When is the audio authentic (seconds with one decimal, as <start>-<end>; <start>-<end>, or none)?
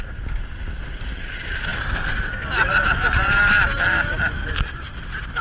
0.0-5.4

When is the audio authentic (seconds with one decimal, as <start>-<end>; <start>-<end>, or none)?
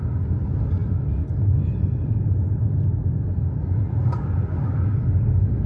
0.0-5.7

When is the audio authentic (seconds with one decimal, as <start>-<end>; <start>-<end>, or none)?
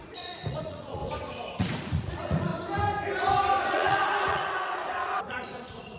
1.0-1.6; 2.5-3.7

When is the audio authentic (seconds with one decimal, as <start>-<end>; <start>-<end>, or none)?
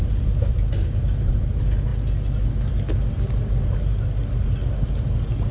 0.0-5.5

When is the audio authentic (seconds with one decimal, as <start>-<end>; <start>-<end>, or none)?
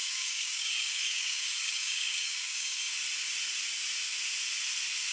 2.8-5.1